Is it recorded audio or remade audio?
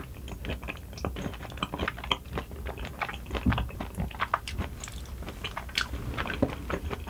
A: recorded